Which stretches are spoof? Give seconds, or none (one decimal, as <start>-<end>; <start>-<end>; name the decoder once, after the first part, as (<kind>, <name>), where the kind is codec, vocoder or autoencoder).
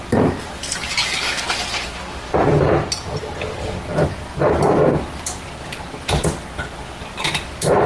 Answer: 0.6-1.4 (codec, DAC)